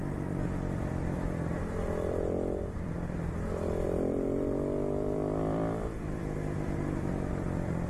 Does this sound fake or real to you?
fake